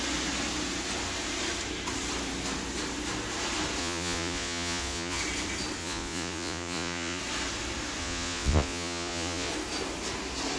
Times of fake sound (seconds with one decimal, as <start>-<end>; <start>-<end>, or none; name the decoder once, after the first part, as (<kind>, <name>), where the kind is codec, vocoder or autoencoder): 3.8-5.2 (vocoder, Vocos); 5.8-7.2; 8.0-9.5